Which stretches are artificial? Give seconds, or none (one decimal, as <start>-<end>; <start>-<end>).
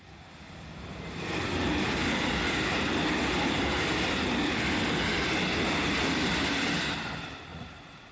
7.5-8.1